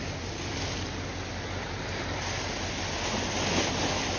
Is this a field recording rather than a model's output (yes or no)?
yes